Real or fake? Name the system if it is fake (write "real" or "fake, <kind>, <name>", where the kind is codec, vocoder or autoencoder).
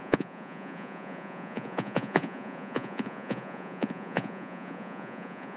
fake, vocoder, Vocos